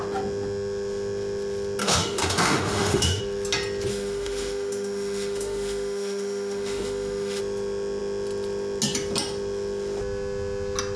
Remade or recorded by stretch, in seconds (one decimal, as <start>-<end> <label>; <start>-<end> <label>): 0.0-1.8 recorded; 1.8-3.2 remade; 3.2-3.9 recorded; 3.9-7.4 remade; 7.4-11.0 recorded